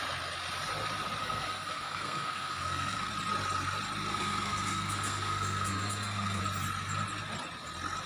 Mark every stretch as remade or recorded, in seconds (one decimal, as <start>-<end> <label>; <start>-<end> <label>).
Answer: 0.0-1.2 recorded; 1.2-3.1 remade; 3.1-4.1 recorded; 4.1-6.4 remade; 6.4-8.1 recorded